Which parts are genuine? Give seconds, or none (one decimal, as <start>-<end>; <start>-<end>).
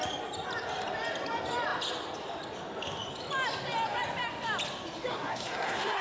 0.0-5.1